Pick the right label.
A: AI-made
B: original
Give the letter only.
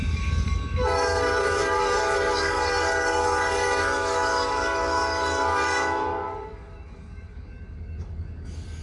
A